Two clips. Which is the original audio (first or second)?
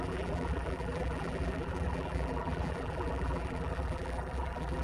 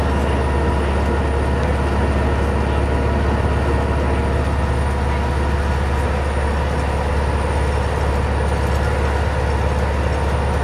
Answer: second